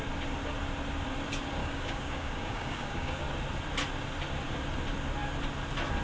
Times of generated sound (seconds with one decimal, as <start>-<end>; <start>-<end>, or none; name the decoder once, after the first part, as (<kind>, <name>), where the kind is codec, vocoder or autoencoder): 1.6-3.2 (codec, DAC)